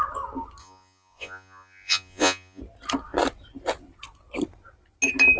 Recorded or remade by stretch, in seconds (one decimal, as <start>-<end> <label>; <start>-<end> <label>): 0.0-0.6 recorded; 0.6-2.6 remade; 2.6-5.4 recorded